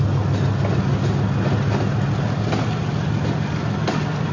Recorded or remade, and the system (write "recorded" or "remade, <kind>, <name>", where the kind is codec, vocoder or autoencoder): recorded